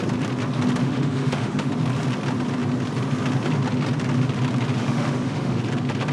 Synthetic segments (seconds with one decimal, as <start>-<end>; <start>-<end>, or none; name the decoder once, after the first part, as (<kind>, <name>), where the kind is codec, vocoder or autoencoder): 0.8-1.7 (autoencoder, DAC-VAE); 4.8-5.6